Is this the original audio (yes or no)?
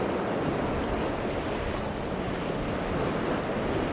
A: yes